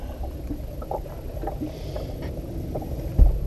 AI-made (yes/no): no